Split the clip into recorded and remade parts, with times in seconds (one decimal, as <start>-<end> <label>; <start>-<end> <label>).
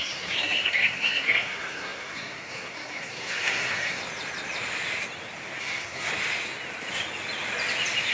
0.0-4.0 remade; 4.0-5.6 recorded; 5.6-6.1 remade; 6.1-8.1 recorded